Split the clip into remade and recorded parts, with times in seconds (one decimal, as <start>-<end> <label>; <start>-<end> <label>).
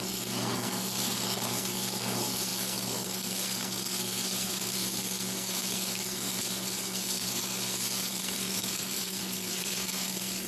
0.0-10.5 remade